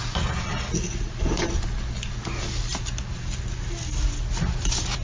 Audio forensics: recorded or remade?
recorded